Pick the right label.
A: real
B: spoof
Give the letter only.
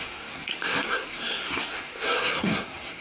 B